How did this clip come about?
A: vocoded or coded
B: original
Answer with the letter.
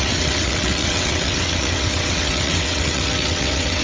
A